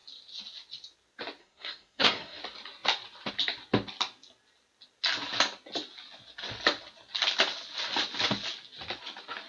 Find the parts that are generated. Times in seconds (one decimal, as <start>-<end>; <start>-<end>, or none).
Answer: 1.4-2.4